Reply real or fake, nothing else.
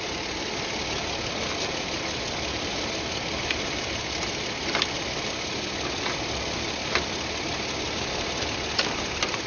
real